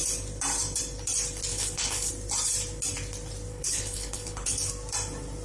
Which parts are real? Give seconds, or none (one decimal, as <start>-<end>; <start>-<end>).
0.0-1.5; 2.1-3.5; 4.7-5.4